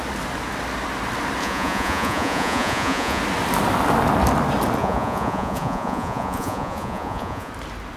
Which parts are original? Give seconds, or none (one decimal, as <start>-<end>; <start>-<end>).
0.0-1.4; 3.2-4.8; 7.5-8.0